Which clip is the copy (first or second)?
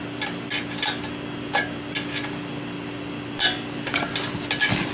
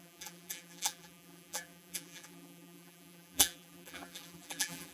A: second